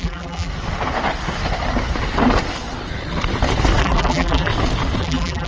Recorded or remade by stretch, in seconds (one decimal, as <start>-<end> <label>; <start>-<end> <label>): 0.0-0.5 remade; 0.5-3.8 recorded; 3.8-4.5 remade; 4.5-5.0 recorded; 5.0-5.5 remade